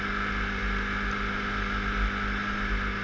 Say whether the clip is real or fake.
real